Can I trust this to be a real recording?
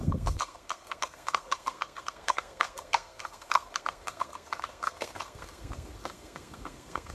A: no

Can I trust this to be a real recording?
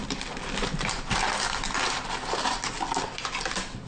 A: yes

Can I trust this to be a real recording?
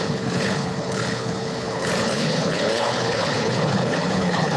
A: no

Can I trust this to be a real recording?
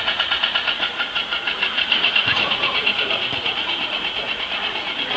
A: no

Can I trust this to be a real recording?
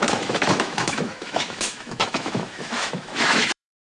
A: no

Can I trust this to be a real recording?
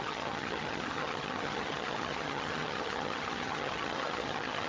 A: no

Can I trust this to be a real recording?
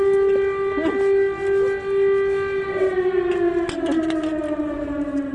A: yes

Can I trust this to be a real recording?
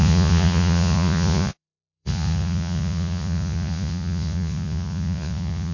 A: no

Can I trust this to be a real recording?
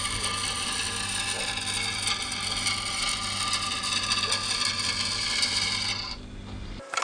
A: yes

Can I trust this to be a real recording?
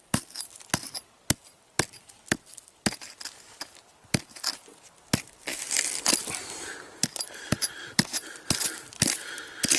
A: yes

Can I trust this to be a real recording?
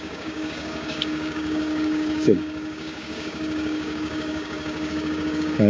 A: no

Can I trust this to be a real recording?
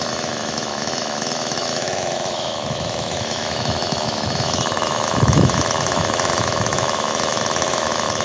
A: no